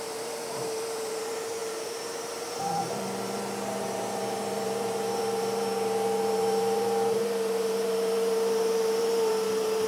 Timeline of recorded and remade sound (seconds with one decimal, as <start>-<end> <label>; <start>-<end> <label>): 0.0-9.9 remade